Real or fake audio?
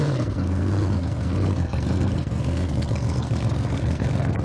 fake